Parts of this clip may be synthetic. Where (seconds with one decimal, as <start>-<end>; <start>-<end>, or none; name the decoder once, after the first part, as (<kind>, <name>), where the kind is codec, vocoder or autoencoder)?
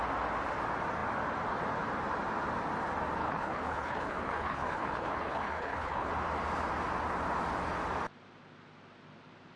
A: 3.2-6.1 (codec, HILCodec)